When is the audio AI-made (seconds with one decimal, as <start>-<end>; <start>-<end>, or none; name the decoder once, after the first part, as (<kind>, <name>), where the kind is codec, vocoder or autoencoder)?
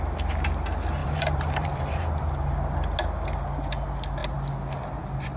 1.0-2.5 (vocoder, BigVGAN v2)